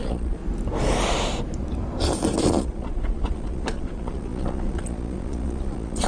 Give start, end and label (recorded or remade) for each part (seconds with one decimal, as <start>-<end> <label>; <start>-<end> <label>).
0.0-0.4 remade; 0.4-2.4 recorded; 2.4-6.1 remade